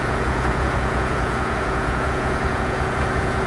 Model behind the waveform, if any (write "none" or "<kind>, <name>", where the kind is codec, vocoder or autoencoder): vocoder, Vocos